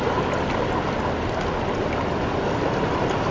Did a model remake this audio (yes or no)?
no